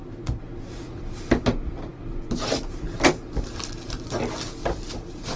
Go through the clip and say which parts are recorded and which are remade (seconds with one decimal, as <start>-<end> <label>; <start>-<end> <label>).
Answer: 0.0-5.4 recorded